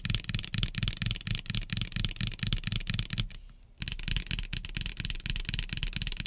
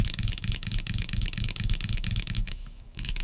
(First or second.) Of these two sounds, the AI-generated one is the second